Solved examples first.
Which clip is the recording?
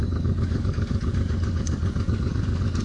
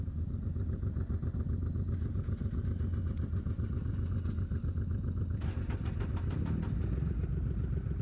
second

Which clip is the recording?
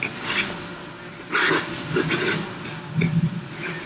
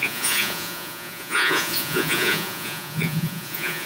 first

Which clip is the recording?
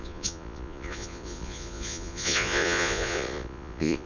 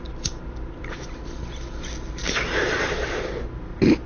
second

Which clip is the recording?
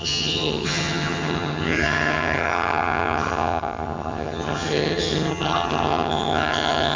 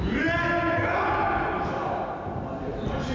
second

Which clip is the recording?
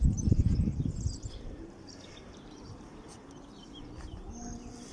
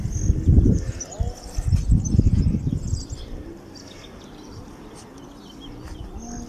second